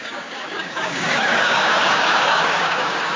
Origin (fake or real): fake